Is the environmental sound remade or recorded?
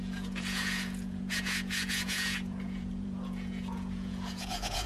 remade